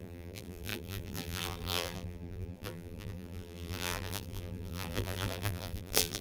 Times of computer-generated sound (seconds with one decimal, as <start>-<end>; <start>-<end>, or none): 0.0-6.2